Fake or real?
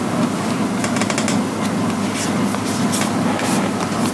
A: real